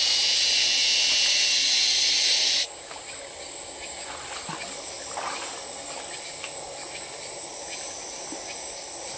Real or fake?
real